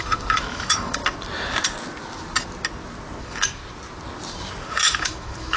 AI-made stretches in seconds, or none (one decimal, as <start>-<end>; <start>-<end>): 0.0-1.0; 3.2-3.6; 4.7-5.6

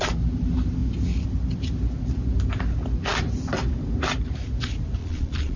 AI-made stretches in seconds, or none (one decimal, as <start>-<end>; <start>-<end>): 5.0-5.6

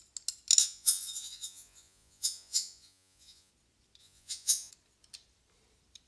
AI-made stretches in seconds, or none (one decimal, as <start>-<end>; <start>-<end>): 0.6-3.5; 4.0-4.7

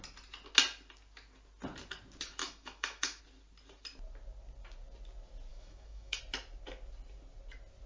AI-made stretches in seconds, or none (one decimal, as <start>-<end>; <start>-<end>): 2.4-3.2; 5.5-6.2

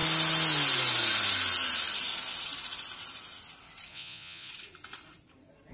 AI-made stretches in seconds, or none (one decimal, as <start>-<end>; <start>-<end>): 3.9-4.5

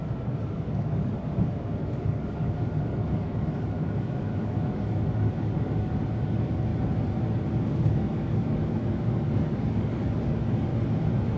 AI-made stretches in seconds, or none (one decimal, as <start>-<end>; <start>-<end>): 0.0-6.7; 7.5-10.7